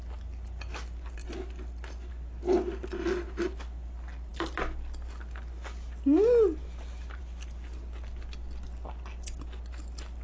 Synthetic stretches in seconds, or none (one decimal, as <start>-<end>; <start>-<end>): none